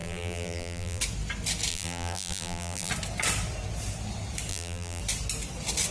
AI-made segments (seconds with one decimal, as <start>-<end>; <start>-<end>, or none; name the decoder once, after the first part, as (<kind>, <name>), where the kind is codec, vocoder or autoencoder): 0.0-1.0 (vocoder, BigVGAN v2); 1.7-2.9; 4.5-5.0